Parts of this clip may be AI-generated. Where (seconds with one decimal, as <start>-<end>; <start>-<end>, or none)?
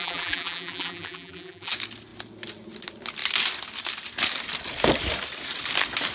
0.0-1.7